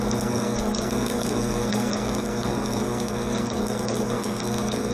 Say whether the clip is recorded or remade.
remade